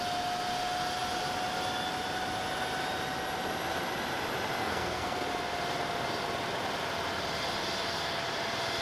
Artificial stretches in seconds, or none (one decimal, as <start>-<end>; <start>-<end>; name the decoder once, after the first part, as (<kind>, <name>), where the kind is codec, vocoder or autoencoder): 4.6-5.3 (codec, SNAC)